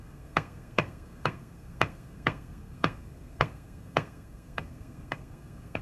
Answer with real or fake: fake